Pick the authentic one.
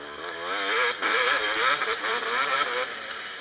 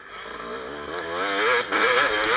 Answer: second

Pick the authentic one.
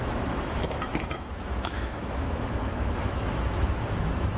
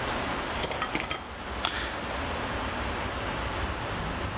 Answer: second